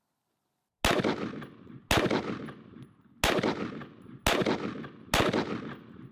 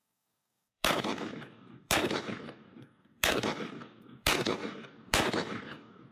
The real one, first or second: first